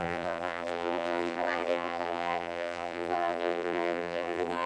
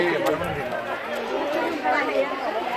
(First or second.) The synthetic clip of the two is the first